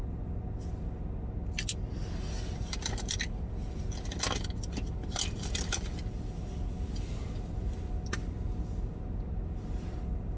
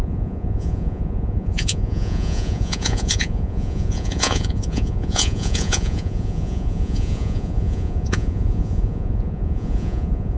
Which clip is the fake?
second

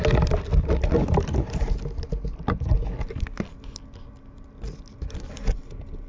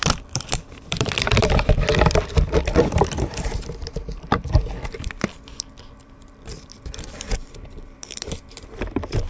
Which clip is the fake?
second